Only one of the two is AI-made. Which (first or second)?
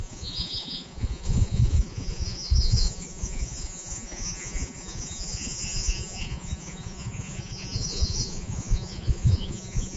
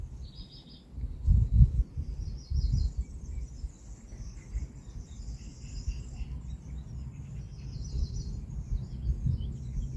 first